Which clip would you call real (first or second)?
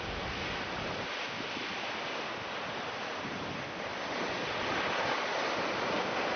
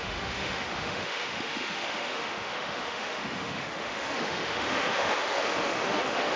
first